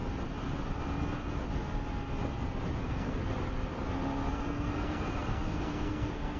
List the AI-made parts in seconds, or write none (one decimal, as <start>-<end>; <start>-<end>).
2.8-3.2; 4.3-6.4